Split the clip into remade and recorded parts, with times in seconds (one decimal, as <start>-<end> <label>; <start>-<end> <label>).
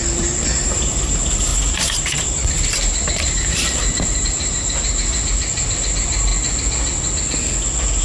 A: 0.0-6.3 remade; 6.3-8.0 recorded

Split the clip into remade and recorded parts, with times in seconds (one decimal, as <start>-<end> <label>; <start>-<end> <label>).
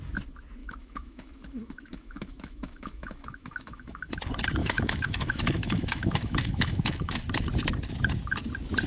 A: 0.0-0.6 recorded; 0.6-4.1 remade; 4.1-4.6 recorded; 4.6-7.2 remade; 7.2-8.9 recorded